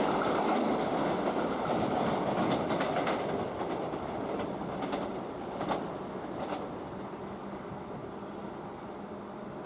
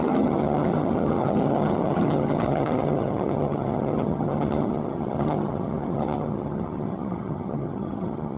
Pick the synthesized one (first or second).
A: second